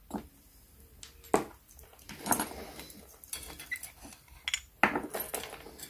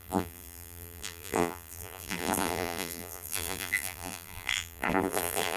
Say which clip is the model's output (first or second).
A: second